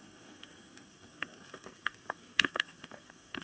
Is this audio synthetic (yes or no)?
yes